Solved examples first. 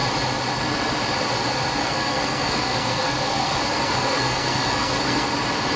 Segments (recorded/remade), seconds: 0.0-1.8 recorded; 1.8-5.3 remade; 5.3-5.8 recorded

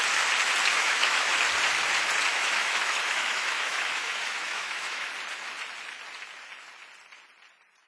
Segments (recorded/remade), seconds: 0.0-0.7 recorded; 0.7-1.3 remade; 1.3-2.3 recorded; 2.3-5.1 remade; 5.1-7.9 recorded

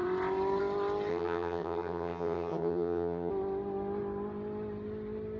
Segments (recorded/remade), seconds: 0.0-1.1 recorded; 1.1-3.3 remade; 3.3-5.4 recorded

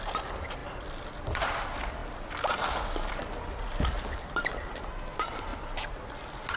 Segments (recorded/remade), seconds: 0.0-6.6 recorded

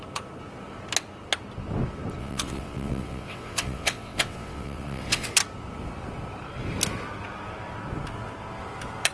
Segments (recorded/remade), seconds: 0.0-2.2 recorded; 2.2-5.3 remade; 5.3-9.1 recorded

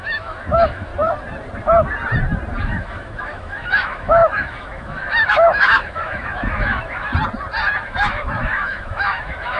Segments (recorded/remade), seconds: 0.0-0.9 remade; 0.9-2.6 recorded; 2.6-7.1 remade; 7.1-7.8 recorded; 7.8-9.6 remade